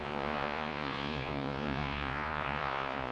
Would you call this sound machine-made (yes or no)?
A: yes